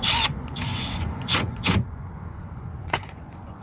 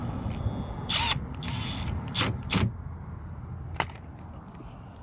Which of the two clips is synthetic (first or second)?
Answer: first